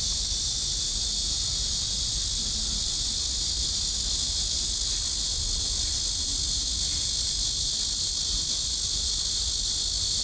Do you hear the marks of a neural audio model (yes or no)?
no